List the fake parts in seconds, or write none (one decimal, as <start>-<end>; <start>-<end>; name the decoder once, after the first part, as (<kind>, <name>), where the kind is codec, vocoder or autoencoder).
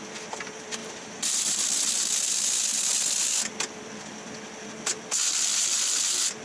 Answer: 0.8-1.6 (vocoder, BigVGAN v2)